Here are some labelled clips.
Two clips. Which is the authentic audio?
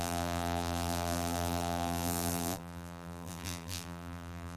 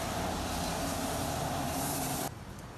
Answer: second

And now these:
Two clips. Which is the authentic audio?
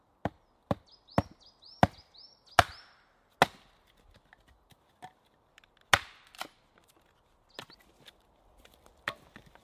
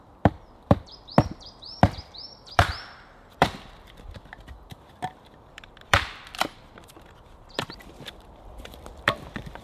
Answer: first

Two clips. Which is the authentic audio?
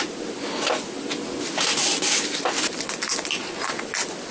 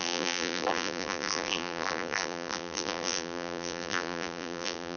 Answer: first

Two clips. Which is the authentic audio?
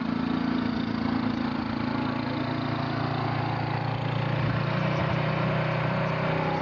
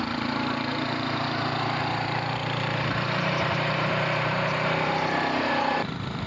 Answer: first